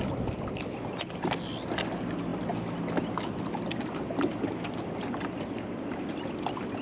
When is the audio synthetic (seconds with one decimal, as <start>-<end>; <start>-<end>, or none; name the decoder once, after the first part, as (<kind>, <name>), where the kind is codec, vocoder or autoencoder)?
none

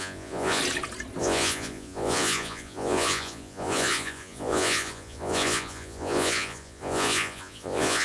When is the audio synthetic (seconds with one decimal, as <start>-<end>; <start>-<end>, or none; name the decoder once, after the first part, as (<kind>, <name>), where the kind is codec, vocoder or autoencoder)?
0.0-0.6 (vocoder, Vocos); 1.2-8.0

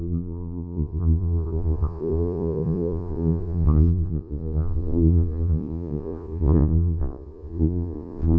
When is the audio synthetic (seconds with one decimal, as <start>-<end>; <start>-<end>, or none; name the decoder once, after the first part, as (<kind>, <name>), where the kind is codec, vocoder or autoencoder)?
0.0-8.4 (vocoder, Vocos)

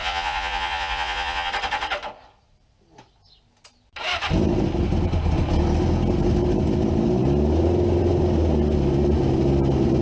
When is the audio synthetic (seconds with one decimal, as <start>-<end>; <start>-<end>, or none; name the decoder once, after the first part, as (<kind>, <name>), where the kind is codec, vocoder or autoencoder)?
0.0-1.5 (vocoder, Vocos)

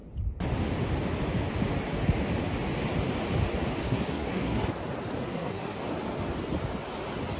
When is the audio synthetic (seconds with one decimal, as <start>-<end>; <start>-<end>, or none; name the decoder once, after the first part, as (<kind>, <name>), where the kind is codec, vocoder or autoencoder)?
3.8-4.7 (codec, SNAC); 5.2-5.8

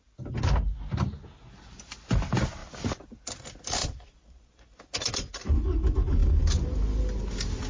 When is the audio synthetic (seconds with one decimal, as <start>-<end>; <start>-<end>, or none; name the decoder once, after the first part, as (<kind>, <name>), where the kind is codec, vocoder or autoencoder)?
3.8-4.8 (vocoder, Vocos)

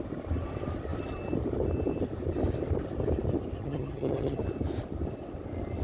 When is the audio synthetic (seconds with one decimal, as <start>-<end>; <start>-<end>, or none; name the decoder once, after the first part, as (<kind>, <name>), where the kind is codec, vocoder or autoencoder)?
3.6-4.4 (vocoder, HiFi-GAN)

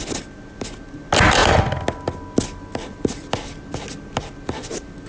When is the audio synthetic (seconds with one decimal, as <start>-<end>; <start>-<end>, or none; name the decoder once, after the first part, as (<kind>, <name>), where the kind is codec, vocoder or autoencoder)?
none